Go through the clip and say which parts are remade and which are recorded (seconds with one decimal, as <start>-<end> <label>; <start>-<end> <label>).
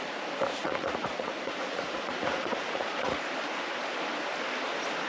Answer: 0.0-0.6 recorded; 0.6-3.2 remade; 3.2-5.1 recorded